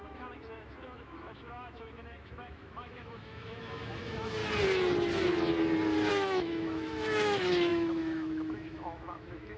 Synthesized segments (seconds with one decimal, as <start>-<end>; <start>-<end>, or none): 0.0-4.4; 6.1-9.6